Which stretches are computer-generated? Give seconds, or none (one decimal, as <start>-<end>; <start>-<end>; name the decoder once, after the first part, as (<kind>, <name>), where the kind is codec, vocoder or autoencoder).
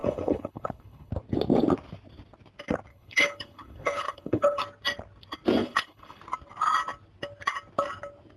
0.0-1.1 (codec, HILCodec); 2.9-4.6; 5.6-6.2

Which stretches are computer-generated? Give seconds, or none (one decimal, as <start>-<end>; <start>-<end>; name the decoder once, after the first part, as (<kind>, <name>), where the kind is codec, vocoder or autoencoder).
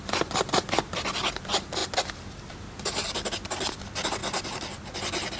none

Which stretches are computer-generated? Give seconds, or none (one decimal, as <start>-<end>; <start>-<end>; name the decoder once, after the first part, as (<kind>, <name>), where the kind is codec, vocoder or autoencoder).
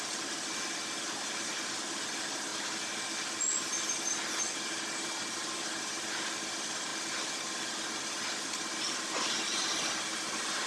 none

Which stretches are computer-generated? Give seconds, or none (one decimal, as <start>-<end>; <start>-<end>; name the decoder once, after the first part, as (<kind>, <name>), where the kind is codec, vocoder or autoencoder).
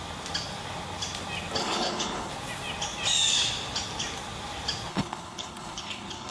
1.6-2.3 (codec, HILCodec); 4.9-6.3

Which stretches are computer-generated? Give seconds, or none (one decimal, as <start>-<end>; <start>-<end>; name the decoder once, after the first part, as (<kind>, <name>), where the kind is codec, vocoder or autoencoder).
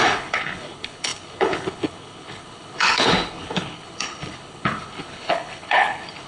0.0-6.3 (codec, HILCodec)